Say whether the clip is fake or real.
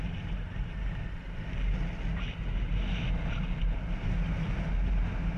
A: real